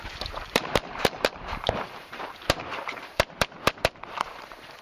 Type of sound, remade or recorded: remade